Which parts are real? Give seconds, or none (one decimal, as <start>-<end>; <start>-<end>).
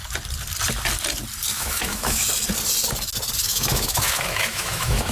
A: 0.0-1.5; 2.3-3.5